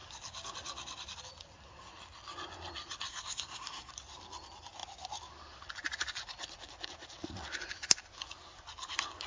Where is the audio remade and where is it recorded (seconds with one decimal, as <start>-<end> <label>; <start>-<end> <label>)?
0.0-3.1 recorded; 3.1-3.9 remade; 3.9-9.3 recorded